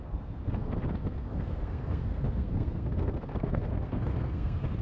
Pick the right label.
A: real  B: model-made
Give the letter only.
B